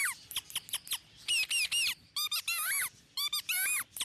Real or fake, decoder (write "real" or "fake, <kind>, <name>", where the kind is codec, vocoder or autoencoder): real